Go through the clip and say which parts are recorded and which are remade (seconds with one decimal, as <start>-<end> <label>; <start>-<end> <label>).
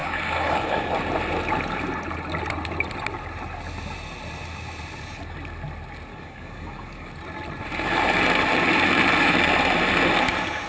0.0-0.9 remade; 0.9-6.1 recorded; 6.1-7.1 remade; 7.1-10.7 recorded